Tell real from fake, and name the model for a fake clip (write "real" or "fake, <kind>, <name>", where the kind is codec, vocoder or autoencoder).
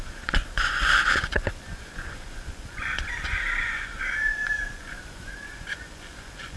fake, vocoder, Vocos